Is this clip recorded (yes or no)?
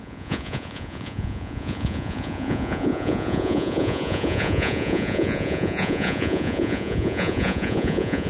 no